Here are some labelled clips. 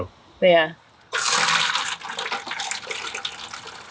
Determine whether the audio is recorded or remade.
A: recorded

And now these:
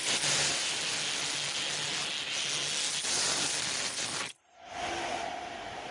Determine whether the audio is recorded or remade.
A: recorded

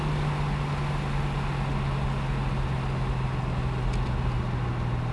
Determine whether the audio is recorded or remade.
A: recorded